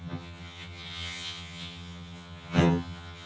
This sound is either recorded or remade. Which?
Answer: remade